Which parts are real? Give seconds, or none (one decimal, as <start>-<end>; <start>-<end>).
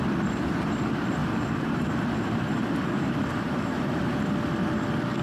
0.0-1.2; 4.3-5.2